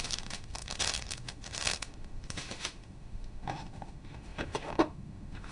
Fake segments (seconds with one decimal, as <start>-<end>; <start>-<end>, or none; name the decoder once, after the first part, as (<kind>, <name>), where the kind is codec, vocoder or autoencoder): 0.0-5.5 (autoencoder, DAC-VAE)